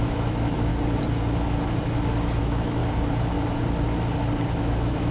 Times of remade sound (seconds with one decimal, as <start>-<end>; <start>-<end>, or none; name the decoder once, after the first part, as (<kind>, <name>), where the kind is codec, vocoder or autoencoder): 0.0-0.7 (autoencoder, DAC-VAE); 2.4-2.8; 4.6-5.1